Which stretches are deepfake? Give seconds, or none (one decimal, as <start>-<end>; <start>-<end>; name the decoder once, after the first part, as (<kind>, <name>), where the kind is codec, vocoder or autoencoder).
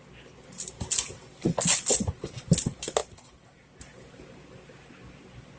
none